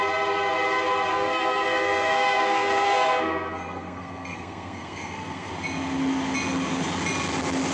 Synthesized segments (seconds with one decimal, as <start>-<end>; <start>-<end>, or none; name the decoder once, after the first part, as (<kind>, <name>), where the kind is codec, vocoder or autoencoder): 1.1-5.5 (codec, SNAC)